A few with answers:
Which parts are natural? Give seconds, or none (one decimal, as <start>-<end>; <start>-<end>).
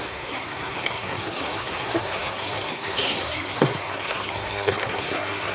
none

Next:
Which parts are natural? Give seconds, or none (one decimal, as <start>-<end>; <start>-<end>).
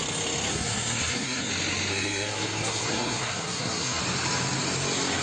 0.0-0.5; 1.5-1.9; 4.0-5.2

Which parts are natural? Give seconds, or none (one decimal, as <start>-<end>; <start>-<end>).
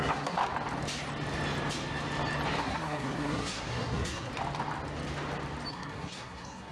0.4-2.6; 4.3-5.7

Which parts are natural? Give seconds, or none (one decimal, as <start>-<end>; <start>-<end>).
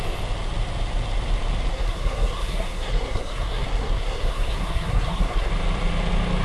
0.0-1.7; 5.5-6.4